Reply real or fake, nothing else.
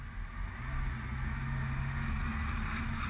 real